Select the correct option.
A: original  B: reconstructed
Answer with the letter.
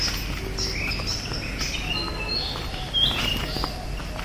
A